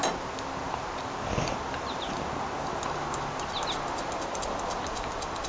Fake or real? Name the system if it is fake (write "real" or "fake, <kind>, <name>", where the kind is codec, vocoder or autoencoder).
real